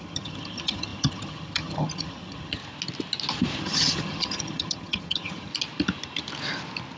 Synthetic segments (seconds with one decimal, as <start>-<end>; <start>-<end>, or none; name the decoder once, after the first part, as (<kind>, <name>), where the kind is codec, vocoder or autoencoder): 0.0-2.6 (vocoder, HiFi-GAN); 3.6-5.5

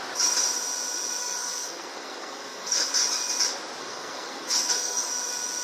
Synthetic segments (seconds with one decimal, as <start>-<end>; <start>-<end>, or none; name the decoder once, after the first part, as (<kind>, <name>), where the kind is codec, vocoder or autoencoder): 1.2-2.9 (codec, SNAC); 3.8-5.1

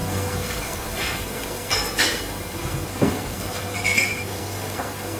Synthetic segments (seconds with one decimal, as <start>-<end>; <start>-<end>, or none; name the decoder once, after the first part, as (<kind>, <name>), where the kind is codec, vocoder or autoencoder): 0.0-5.2 (codec, SNAC)

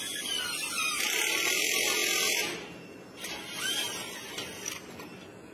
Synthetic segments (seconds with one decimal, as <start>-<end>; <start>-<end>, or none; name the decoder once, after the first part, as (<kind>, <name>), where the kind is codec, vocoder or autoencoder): none

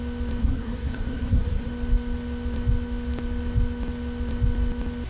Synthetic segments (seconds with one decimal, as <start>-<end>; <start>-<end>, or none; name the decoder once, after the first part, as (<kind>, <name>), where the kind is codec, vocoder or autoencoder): 0.4-1.7 (codec, SNAC)